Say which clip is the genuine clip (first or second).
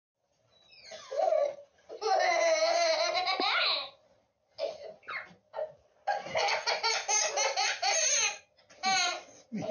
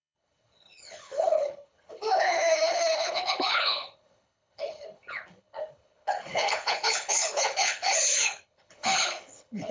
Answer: first